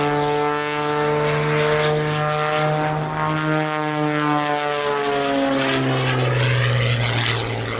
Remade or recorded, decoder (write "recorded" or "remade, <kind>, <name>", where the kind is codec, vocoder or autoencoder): recorded